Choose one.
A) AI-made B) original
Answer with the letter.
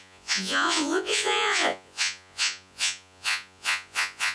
A